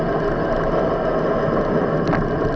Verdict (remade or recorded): recorded